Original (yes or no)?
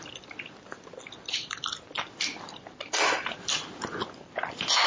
yes